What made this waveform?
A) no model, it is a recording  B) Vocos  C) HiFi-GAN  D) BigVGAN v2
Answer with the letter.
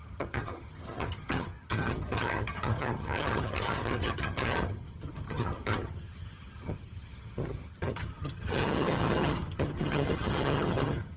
C